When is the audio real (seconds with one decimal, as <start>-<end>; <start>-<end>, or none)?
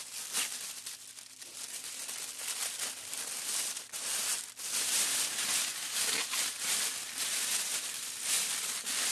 0.0-9.1